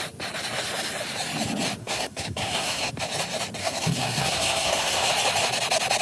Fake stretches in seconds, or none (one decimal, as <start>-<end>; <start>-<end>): 1.8-2.9; 3.6-5.1